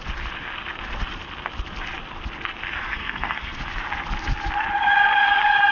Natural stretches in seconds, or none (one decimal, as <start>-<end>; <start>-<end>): 0.0-2.9; 3.6-5.7